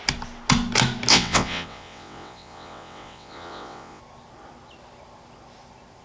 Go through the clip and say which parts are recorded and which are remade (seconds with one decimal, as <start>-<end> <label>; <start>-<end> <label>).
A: 0.0-1.1 recorded; 1.1-4.0 remade; 4.0-6.0 recorded